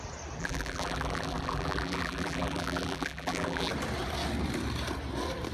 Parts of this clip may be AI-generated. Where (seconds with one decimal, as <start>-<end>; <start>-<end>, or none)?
0.4-3.7